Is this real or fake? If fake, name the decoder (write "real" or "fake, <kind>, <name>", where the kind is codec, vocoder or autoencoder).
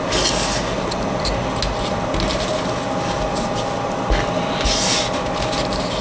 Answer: real